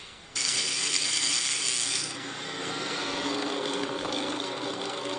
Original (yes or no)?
no